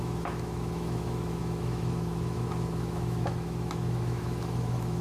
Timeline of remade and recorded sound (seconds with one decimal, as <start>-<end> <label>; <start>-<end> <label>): 0.0-5.0 remade